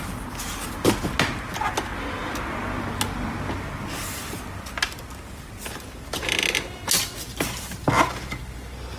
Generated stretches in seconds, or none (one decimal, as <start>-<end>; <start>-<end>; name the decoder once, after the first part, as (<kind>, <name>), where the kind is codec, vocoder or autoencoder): none